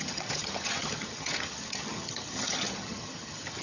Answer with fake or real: fake